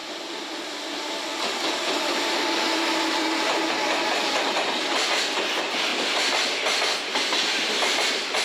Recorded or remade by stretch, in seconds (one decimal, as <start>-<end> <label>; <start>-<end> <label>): 0.0-3.7 remade; 3.7-7.3 recorded; 7.3-8.4 remade

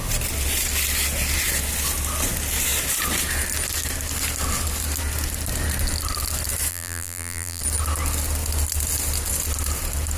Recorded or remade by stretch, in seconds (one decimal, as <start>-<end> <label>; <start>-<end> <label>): 0.0-6.7 recorded; 6.7-7.6 remade; 7.6-10.2 recorded